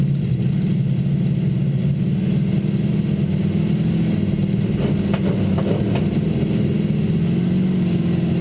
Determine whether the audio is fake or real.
real